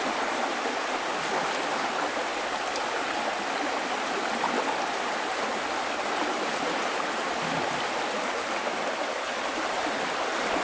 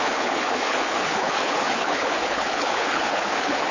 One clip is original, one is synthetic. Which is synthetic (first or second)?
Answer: second